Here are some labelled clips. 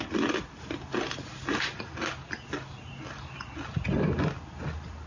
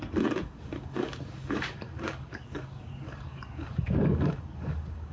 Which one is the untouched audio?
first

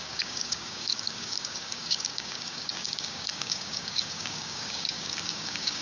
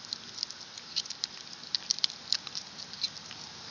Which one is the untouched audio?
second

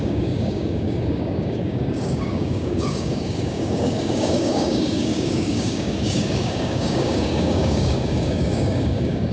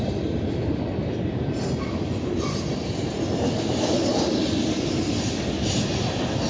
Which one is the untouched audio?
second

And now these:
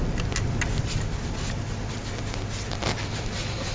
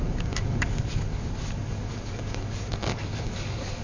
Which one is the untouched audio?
first